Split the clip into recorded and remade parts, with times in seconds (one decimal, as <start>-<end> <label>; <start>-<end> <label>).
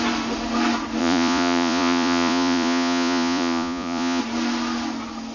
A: 0.0-1.0 recorded; 1.0-4.2 remade; 4.2-5.3 recorded